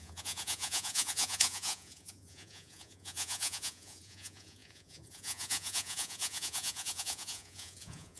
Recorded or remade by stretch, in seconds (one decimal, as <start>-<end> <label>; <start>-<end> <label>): 0.0-8.2 remade